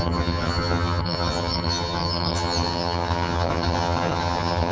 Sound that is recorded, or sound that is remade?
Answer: remade